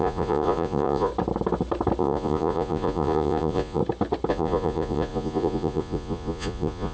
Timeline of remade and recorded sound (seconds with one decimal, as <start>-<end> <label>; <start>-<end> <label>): 0.0-1.1 remade; 1.1-2.0 recorded; 2.0-3.8 remade; 3.8-4.3 recorded; 4.3-6.9 remade

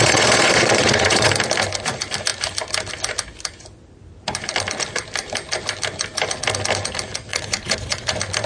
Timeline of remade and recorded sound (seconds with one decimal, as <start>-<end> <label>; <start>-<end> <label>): 0.0-1.3 remade; 1.3-7.3 recorded; 7.3-8.1 remade; 8.1-8.5 recorded